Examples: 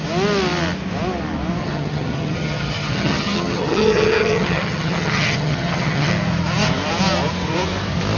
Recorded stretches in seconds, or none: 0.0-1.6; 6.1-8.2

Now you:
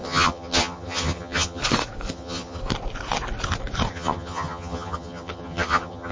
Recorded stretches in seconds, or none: 1.6-2.1; 2.6-3.9